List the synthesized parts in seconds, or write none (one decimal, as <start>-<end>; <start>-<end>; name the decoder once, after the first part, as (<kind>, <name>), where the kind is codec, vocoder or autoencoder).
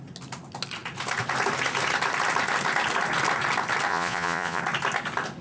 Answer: 3.9-4.6 (vocoder, Vocos)